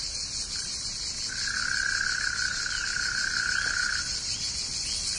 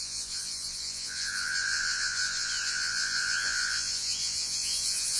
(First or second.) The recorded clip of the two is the first